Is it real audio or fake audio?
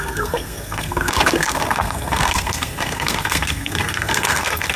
fake